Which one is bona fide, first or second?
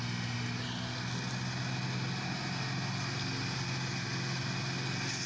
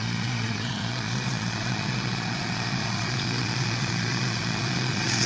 first